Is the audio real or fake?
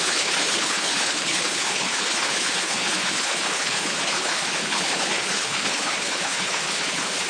fake